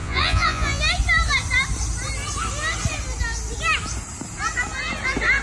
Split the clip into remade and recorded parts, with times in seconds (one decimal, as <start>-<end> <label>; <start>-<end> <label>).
0.0-0.8 remade; 0.8-5.4 recorded